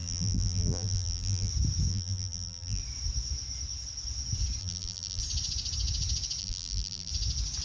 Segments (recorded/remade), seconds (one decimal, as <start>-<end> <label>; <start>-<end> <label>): 0.0-1.5 remade; 1.5-1.9 recorded; 1.9-2.8 remade; 2.8-4.6 recorded; 4.6-5.2 remade; 5.2-6.4 recorded; 6.4-7.1 remade; 7.1-7.6 recorded